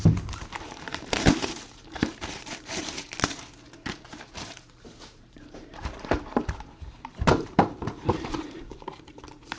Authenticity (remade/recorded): remade